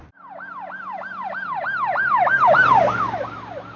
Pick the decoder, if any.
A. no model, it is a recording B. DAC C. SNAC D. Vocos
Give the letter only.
A